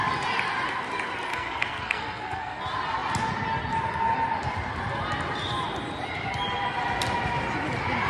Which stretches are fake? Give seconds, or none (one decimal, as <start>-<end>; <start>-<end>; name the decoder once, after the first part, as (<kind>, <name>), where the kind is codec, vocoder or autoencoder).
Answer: 1.3-2.6 (codec, SNAC)

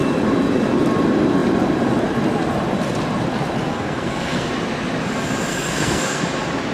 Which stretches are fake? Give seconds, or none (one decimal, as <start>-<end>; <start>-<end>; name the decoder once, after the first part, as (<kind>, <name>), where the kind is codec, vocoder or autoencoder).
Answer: 3.7-4.5 (codec, SNAC); 5.5-6.2

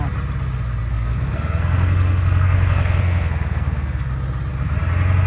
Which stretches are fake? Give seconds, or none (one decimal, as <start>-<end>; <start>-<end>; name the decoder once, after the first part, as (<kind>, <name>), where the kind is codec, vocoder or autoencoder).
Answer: 0.9-4.1 (codec, SNAC)

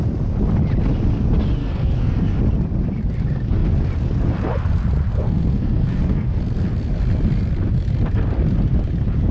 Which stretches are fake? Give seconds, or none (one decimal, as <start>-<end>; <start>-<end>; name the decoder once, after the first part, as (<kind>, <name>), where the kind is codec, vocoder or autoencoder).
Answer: 1.6-2.4 (codec, SNAC); 5.1-6.4

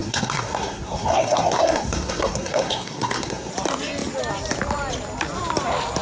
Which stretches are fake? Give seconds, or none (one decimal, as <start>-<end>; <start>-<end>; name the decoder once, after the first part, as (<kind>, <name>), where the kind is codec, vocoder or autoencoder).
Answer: 0.0-3.5 (codec, SNAC)